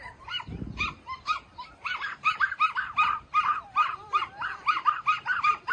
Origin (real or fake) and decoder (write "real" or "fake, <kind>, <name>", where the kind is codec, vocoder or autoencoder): fake, vocoder, BigVGAN v2